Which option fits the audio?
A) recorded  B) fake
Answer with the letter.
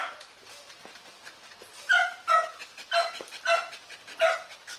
A